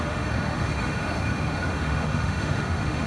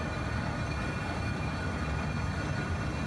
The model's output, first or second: first